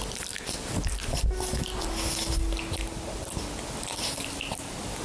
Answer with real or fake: real